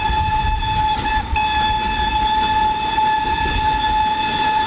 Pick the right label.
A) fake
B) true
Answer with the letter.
B